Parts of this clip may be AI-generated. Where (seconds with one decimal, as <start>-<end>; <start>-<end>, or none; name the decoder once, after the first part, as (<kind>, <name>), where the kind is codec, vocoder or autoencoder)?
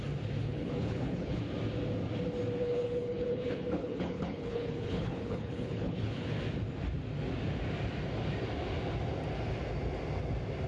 0.4-1.4 (codec, HILCodec); 2.6-6.4